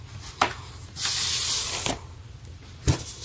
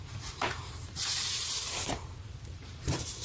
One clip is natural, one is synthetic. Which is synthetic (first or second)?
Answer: second